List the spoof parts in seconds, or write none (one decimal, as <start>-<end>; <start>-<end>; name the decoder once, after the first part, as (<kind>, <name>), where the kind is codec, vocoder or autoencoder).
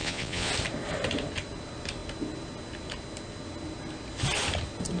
0.0-0.5 (vocoder, Vocos)